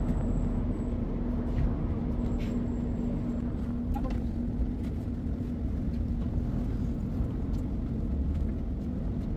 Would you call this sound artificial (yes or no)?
no